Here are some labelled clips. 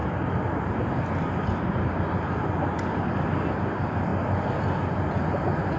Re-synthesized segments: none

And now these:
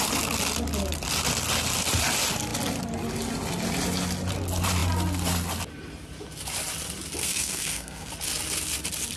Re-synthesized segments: 7.2-8.1 (codec, SNAC)